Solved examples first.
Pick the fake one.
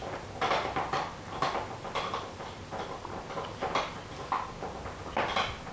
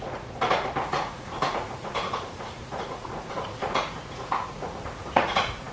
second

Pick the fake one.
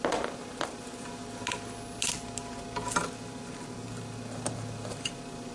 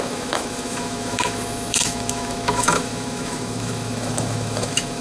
second